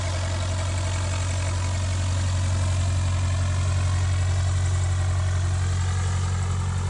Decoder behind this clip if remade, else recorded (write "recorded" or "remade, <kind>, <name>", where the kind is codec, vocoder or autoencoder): recorded